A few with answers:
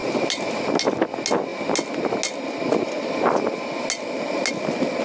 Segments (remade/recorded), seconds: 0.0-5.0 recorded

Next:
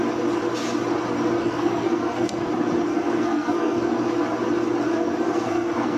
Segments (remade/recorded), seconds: 0.0-1.4 recorded; 1.4-2.5 remade; 2.5-2.9 recorded; 2.9-4.1 remade; 4.1-4.9 recorded; 4.9-6.0 remade

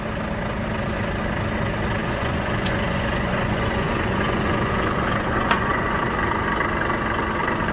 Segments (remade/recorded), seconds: 0.0-2.0 recorded; 2.0-6.0 remade; 6.0-7.7 recorded

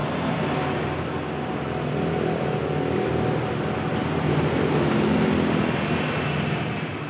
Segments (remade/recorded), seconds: 0.0-7.1 recorded